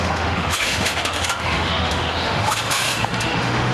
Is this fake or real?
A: fake